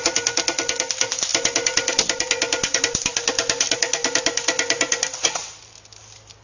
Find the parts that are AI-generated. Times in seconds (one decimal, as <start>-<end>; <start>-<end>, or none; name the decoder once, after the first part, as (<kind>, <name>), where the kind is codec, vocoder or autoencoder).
none